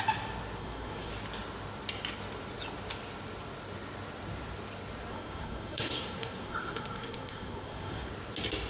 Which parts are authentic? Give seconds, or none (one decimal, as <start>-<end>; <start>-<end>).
0.0-0.6; 1.1-5.1; 8.1-8.7